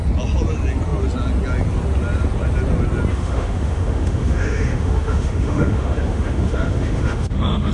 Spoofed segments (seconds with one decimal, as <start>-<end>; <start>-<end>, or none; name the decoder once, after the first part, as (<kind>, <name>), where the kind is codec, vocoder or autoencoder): 3.1-7.7 (autoencoder, DAC-VAE)